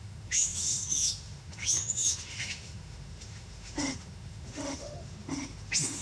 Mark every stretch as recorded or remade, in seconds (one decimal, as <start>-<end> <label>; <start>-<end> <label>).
0.0-6.0 remade